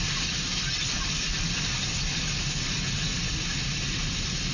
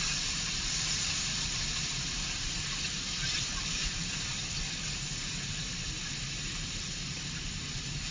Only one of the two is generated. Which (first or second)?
second